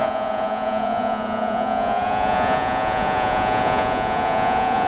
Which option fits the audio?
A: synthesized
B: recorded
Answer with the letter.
A